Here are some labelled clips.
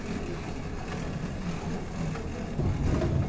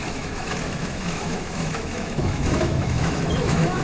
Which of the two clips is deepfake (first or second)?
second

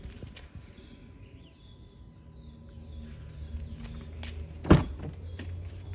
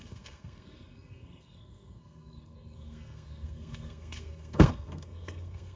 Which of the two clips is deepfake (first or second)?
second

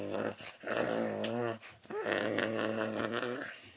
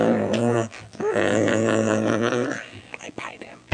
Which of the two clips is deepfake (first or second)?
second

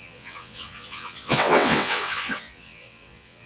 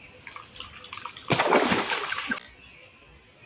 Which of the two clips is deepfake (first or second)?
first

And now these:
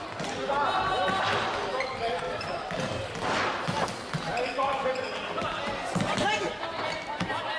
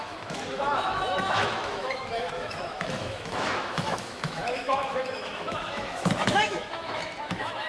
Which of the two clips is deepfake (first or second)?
second